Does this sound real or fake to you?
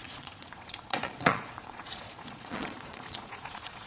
fake